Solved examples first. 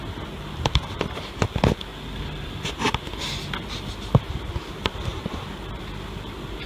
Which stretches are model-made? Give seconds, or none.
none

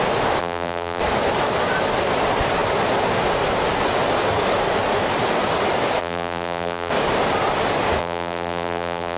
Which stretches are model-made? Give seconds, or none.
0.4-1.0; 6.0-6.9; 8.0-9.2

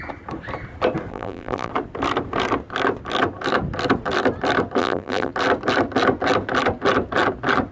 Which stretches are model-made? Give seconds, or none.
1.1-1.7; 4.8-5.3

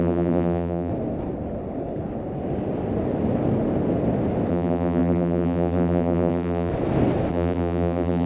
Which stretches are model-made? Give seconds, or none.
0.0-0.9; 4.5-6.7; 7.3-8.3

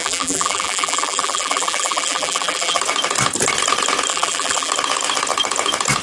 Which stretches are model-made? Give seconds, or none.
0.0-2.8; 4.1-4.7

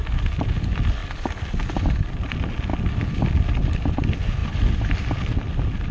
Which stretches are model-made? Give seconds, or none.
1.0-2.1; 4.4-5.3